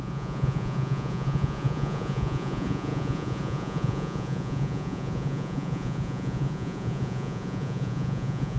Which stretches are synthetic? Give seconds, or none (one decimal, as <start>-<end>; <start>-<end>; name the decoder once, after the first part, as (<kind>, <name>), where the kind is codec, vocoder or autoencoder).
0.0-8.6 (vocoder, Vocos)